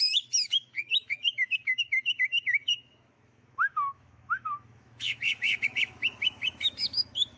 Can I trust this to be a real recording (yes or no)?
no